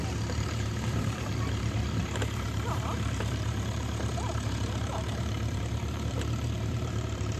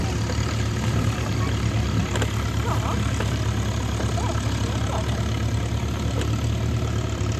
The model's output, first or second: first